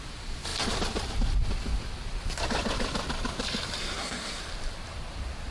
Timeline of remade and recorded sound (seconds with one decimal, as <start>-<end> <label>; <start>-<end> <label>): 0.0-3.8 recorded; 3.8-4.4 remade; 4.4-5.5 recorded